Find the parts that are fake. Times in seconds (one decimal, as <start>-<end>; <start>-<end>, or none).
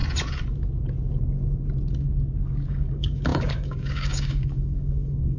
2.4-5.4